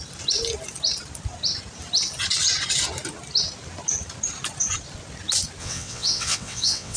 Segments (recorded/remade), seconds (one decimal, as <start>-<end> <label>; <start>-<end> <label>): 0.0-5.6 recorded; 5.6-7.0 remade